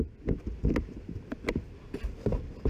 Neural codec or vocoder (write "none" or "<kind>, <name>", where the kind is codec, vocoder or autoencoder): none